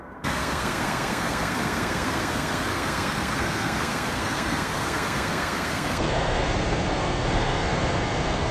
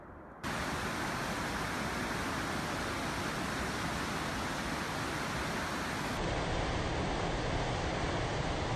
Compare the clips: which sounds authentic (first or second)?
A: second